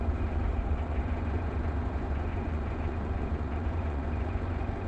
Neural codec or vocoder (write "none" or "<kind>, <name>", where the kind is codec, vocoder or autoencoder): vocoder, Vocos